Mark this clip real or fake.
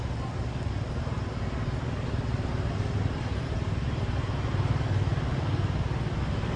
real